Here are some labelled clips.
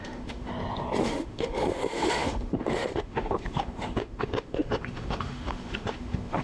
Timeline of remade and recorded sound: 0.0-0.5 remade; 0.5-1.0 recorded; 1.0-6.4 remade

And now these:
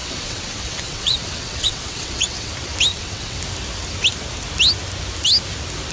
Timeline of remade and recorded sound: 0.0-2.5 remade; 2.5-2.9 recorded; 2.9-3.4 remade; 3.4-5.9 recorded

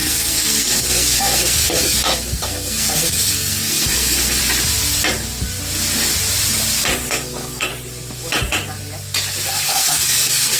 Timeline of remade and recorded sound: 0.0-4.4 remade; 4.4-7.1 recorded; 7.1-7.7 remade; 7.7-9.5 recorded; 9.5-10.6 remade

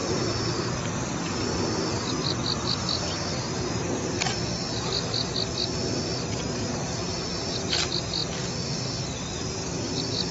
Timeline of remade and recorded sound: 0.0-1.9 recorded; 1.9-4.4 remade; 4.4-10.3 recorded